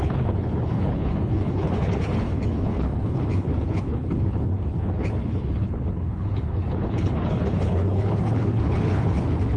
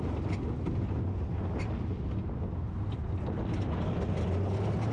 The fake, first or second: first